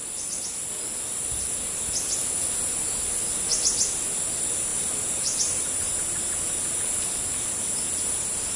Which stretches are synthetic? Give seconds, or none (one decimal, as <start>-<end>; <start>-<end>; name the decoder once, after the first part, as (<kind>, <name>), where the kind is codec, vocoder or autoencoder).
4.7-5.8 (vocoder, BigVGAN v2)